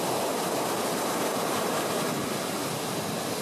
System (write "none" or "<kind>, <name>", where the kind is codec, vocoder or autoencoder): none